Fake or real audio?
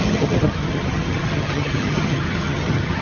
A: fake